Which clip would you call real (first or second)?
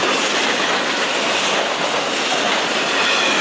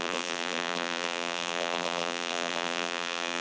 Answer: first